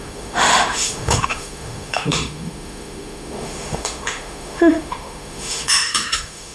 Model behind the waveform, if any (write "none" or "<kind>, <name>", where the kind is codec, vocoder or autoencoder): autoencoder, DAC-VAE